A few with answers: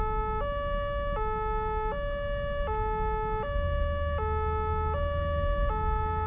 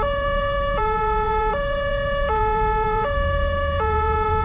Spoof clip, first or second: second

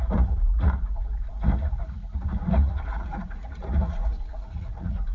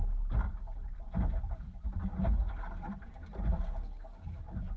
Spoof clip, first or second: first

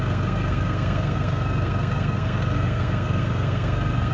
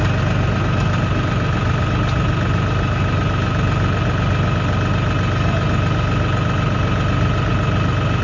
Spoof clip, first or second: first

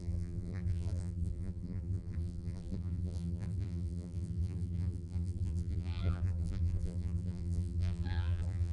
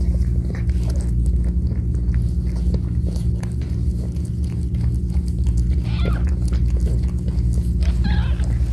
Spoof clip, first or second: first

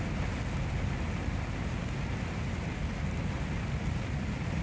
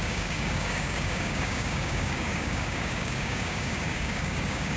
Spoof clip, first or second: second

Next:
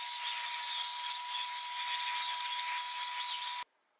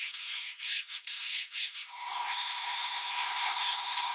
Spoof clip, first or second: second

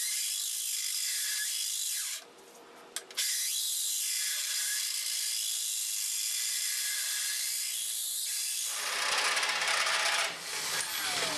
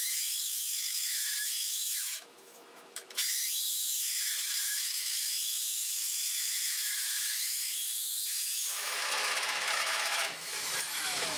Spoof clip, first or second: second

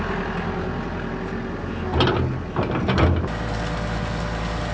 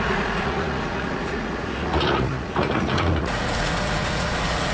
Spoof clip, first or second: second